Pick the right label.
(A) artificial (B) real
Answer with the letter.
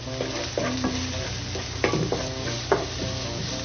B